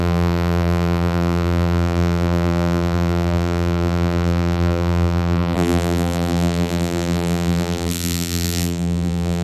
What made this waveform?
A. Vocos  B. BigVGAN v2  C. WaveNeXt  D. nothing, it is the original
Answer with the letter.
B